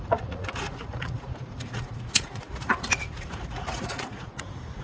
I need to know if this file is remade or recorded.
remade